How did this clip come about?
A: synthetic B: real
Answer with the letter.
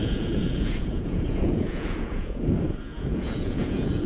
A